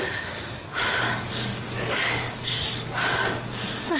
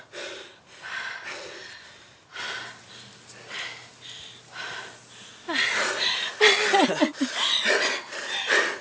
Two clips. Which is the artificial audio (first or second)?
first